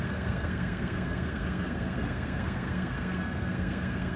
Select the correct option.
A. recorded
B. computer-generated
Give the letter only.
B